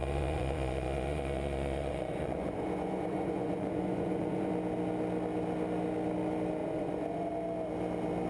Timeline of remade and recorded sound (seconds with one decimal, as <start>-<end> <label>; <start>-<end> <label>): 0.0-4.5 remade; 4.5-6.6 recorded; 6.6-7.3 remade; 7.3-8.3 recorded